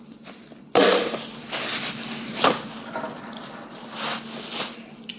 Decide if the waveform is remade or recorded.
recorded